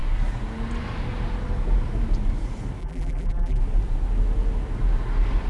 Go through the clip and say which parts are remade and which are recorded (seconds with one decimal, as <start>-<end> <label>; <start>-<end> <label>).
0.0-2.8 recorded; 2.8-3.6 remade; 3.6-5.5 recorded